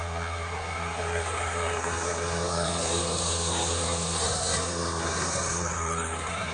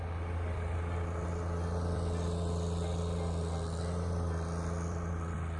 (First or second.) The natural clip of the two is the second